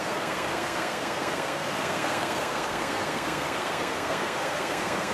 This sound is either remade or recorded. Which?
remade